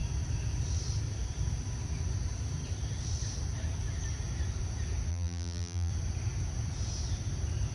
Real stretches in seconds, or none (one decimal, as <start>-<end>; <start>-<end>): 0.0-5.1; 5.9-7.7